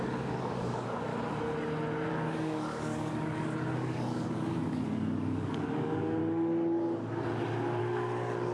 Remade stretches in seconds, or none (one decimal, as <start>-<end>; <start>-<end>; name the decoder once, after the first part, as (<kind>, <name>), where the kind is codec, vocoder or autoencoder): 0.0-1.1 (codec, DAC); 2.1-6.2; 7.8-8.5